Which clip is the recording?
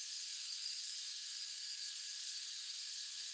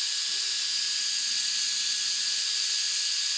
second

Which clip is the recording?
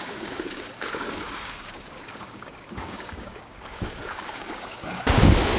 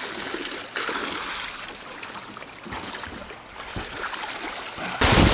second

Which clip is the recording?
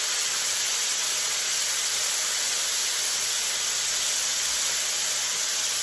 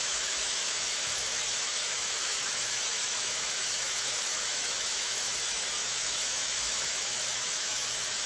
first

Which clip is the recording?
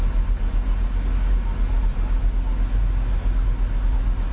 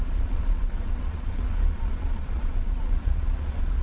first